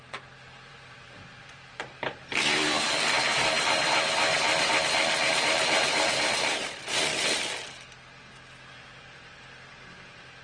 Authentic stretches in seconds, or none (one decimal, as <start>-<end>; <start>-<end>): 7.1-8.7